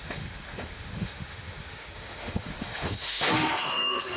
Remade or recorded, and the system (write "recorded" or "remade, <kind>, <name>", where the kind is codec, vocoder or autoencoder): remade, autoencoder, DAC-VAE